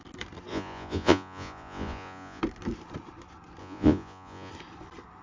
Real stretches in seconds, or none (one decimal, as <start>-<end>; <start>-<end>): 0.0-0.5; 2.4-3.6; 4.5-5.2